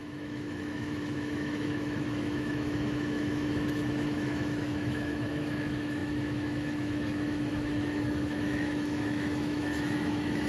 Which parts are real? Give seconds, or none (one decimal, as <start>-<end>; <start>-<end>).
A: none